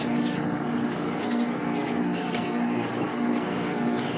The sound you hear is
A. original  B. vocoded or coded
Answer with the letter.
B